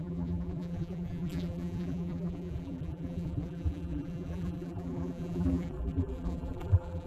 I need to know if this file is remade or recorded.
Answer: remade